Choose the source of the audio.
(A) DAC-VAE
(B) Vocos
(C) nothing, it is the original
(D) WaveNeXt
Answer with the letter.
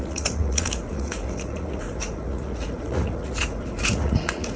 B